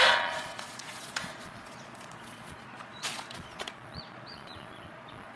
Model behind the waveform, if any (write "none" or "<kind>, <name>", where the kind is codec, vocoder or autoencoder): vocoder, Vocos